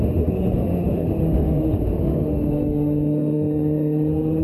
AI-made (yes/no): yes